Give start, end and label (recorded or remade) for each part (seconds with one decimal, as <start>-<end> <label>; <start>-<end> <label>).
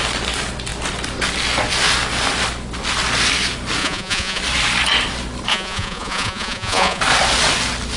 0.0-3.8 recorded; 3.8-4.4 remade; 4.4-5.5 recorded; 5.5-7.0 remade; 7.0-8.0 recorded